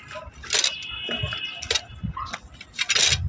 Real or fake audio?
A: real